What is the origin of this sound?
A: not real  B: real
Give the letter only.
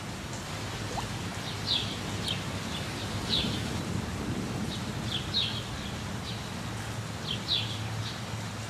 B